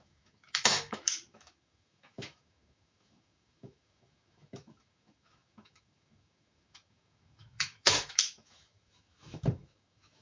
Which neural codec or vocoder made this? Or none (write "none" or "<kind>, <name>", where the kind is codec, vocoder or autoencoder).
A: autoencoder, DAC-VAE